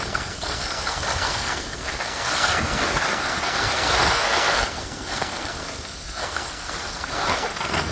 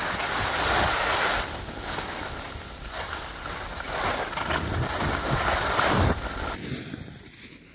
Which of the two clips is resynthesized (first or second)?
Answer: first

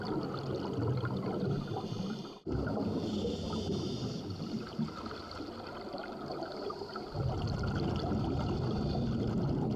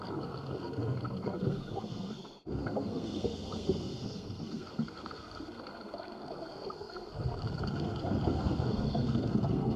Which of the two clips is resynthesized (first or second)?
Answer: second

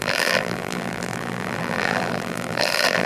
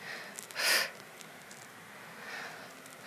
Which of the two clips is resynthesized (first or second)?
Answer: first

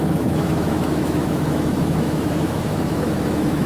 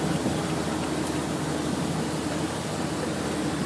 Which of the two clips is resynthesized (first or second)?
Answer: first